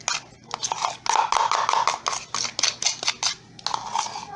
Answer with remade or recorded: recorded